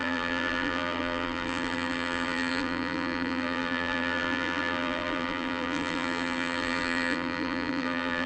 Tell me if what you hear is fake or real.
fake